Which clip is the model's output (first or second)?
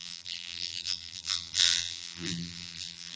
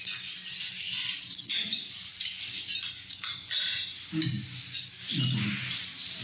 first